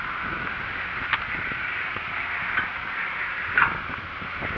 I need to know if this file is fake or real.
real